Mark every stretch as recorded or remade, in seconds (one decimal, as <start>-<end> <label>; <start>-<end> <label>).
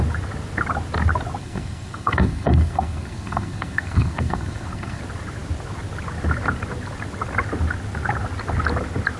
0.0-1.4 recorded; 1.4-5.0 remade; 5.0-9.2 recorded